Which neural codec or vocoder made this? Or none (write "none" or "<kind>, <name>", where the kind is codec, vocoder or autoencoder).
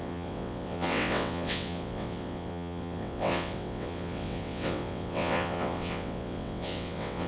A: vocoder, WaveNeXt